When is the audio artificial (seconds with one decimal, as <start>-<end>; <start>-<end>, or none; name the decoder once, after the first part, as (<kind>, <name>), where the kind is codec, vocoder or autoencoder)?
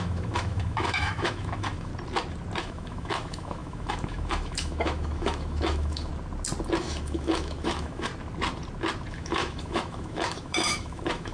0.0-1.9 (autoencoder, DAC-VAE); 2.6-6.1; 6.8-8.1; 9.1-11.3